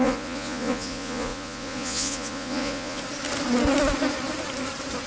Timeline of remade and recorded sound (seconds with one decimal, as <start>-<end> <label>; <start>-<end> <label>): 0.0-3.0 remade; 3.0-5.1 recorded